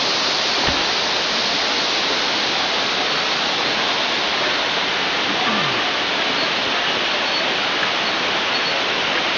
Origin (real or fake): real